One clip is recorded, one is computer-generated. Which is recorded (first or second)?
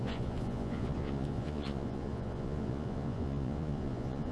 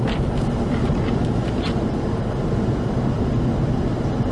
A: second